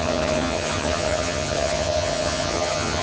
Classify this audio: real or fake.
fake